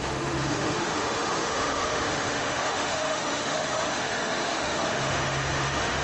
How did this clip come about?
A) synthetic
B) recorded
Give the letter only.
A